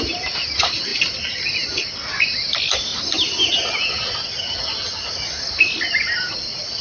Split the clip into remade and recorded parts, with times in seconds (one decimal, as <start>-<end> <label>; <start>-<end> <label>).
0.0-6.8 recorded